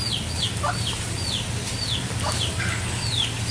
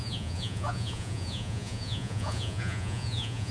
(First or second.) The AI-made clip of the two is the second